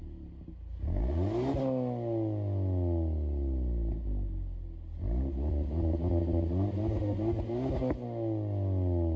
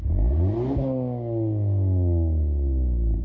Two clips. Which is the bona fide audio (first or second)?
first